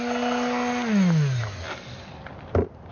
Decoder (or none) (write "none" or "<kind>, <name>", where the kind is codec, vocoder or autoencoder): none